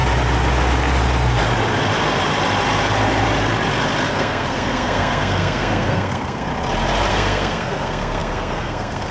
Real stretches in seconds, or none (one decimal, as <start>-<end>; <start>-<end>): 0.0-4.1; 6.5-7.1